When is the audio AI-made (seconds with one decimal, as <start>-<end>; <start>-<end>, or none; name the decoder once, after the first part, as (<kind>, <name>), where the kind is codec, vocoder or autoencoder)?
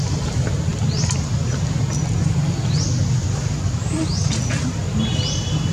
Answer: none